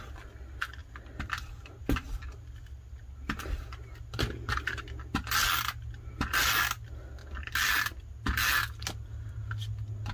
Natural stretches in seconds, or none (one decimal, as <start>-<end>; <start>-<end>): 0.0-10.1